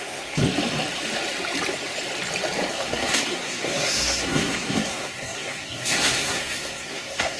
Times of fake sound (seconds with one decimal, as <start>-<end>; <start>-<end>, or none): 0.0-0.4; 2.7-7.4